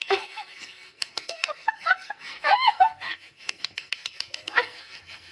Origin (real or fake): fake